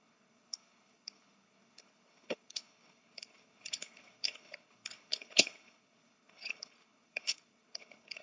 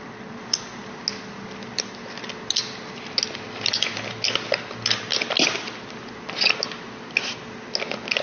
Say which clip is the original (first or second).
second